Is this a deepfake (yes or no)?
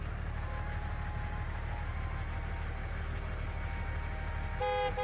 no